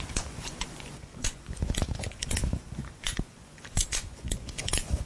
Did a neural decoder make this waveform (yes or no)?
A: yes